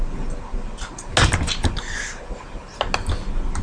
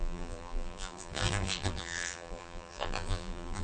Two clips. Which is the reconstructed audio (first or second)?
second